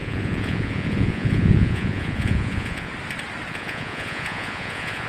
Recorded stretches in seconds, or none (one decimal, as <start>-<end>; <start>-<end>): 2.9-3.5